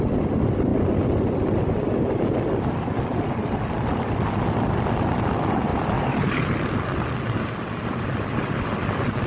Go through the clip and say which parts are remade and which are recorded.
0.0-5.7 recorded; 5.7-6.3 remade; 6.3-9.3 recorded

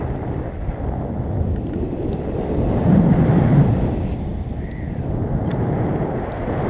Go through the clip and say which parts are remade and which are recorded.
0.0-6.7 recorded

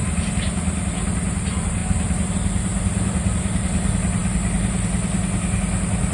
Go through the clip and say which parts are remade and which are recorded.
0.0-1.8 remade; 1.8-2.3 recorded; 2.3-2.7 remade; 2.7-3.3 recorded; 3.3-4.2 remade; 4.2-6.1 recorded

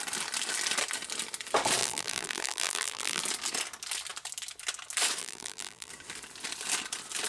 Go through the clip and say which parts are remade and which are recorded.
0.0-1.8 recorded; 1.8-3.2 remade; 3.2-5.2 recorded; 5.2-5.9 remade; 5.9-7.3 recorded

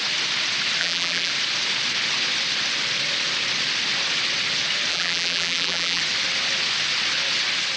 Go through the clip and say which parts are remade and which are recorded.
0.0-0.8 recorded; 0.8-1.3 remade; 1.3-4.9 recorded; 4.9-6.0 remade; 6.0-7.8 recorded

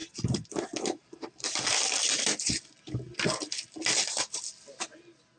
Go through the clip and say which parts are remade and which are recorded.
0.0-2.2 remade; 2.2-5.4 recorded

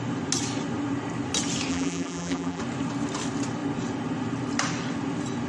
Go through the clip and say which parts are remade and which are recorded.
0.0-1.7 recorded; 1.7-2.6 remade; 2.6-5.5 recorded

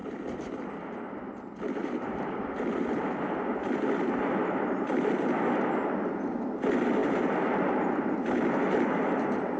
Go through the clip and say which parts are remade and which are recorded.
0.0-1.3 remade; 1.3-1.8 recorded; 1.8-3.0 remade; 3.0-7.0 recorded; 7.0-8.5 remade; 8.5-9.6 recorded